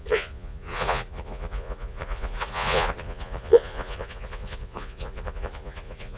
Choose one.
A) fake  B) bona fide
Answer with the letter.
A